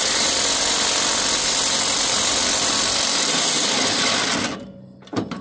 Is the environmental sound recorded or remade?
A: recorded